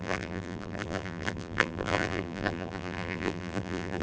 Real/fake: fake